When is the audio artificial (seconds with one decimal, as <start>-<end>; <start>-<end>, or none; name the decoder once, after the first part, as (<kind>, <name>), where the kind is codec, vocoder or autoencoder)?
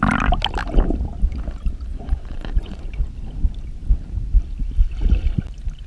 1.9-2.8 (vocoder, Vocos)